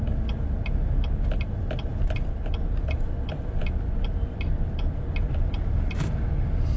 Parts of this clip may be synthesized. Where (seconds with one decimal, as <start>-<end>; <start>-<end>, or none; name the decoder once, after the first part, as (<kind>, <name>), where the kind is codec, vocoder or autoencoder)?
none